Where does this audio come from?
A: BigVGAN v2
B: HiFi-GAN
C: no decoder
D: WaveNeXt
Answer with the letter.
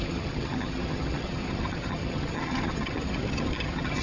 B